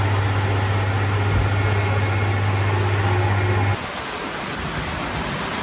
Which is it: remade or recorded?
recorded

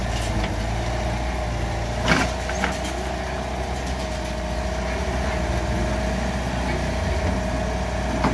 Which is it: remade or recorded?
recorded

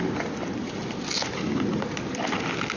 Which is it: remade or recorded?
recorded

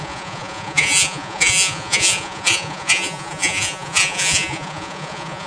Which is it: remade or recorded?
remade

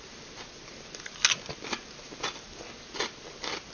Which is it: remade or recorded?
recorded